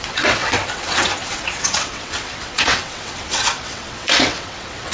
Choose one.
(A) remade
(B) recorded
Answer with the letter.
A